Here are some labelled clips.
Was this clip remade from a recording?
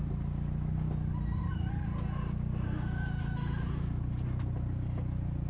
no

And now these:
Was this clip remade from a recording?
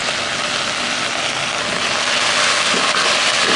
no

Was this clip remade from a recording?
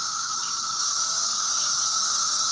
yes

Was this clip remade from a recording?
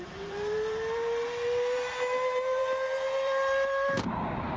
yes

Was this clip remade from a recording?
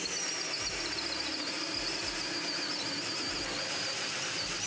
no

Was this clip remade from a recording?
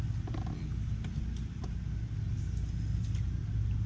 no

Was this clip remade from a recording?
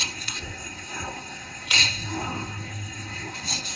yes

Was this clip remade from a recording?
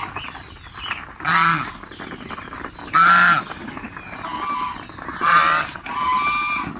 no